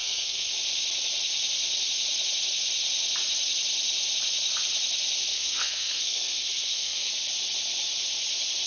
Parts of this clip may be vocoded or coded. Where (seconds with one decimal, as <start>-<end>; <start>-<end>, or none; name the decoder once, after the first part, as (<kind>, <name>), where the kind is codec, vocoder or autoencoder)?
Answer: 0.0-0.5 (codec, SNAC); 5.3-7.1